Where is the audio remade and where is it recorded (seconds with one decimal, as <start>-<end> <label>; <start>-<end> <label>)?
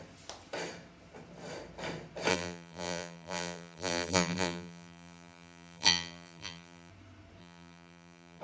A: 0.0-2.3 recorded; 2.3-6.9 remade; 6.9-7.4 recorded; 7.4-8.4 remade